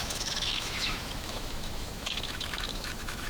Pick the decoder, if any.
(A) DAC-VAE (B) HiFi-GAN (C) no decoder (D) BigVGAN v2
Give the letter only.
A